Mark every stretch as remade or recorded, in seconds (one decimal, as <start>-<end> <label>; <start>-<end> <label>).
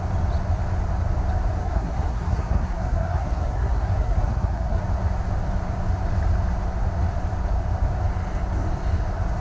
0.0-1.6 recorded; 1.6-4.8 remade; 4.8-9.4 recorded